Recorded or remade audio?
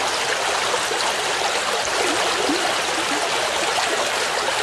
recorded